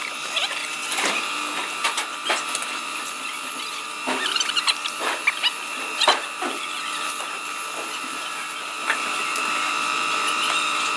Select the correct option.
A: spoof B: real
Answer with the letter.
A